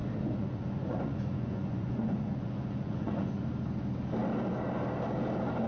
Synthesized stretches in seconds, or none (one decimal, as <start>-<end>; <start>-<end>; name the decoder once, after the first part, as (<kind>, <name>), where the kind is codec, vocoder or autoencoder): 0.0-3.4 (vocoder, Vocos)